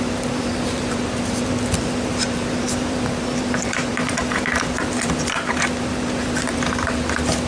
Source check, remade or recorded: remade